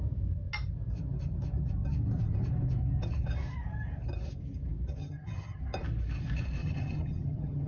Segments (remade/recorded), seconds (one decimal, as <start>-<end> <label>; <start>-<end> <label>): 0.0-5.0 recorded; 5.0-5.6 remade; 5.6-6.6 recorded; 6.6-7.7 remade